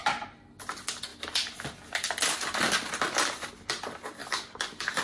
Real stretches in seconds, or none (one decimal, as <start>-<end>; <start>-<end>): 0.0-4.2

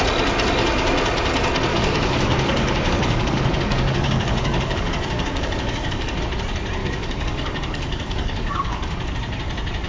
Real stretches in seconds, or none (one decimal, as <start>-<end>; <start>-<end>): 0.0-1.7; 6.2-6.8; 9.1-9.9

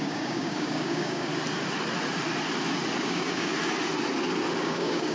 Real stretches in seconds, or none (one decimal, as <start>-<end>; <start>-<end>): 1.3-3.0; 3.5-4.6

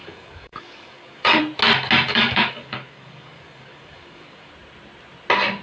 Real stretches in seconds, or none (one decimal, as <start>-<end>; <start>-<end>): 1.4-2.1; 4.5-5.6

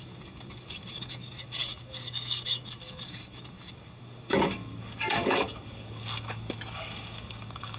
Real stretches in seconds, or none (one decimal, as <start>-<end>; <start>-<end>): none

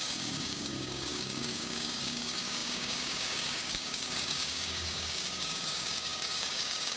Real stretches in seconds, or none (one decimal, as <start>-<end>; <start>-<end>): none

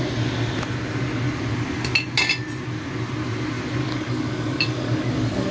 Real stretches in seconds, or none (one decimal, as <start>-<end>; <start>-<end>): 0.0-3.8